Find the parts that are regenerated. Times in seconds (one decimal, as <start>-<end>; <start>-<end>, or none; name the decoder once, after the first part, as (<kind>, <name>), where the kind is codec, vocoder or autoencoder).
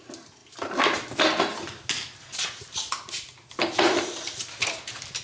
none